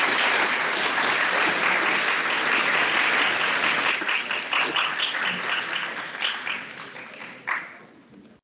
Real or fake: real